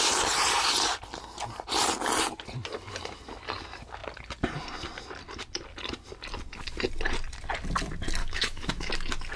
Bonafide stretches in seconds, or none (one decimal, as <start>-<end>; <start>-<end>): 0.0-8.2; 8.9-9.4